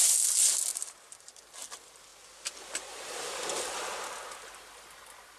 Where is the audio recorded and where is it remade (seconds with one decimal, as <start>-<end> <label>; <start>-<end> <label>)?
0.0-0.7 recorded; 0.7-1.4 remade; 1.4-5.4 recorded

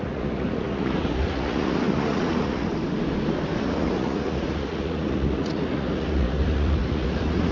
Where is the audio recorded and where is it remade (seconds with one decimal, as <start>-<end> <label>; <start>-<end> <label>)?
0.0-2.7 remade; 2.7-3.6 recorded; 3.6-7.5 remade

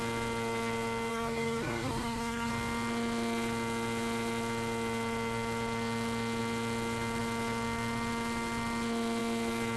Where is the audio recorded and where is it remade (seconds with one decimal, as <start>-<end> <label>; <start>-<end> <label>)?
0.0-1.1 recorded; 1.1-2.5 remade; 2.5-9.8 recorded